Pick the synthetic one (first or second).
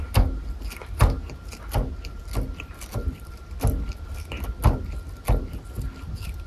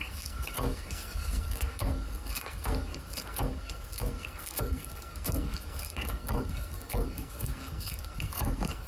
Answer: second